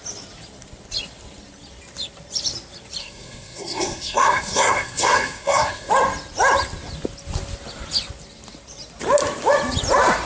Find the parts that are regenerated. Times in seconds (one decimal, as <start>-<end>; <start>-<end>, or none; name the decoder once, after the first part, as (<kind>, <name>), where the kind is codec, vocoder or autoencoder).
3.0-5.9 (codec, SNAC)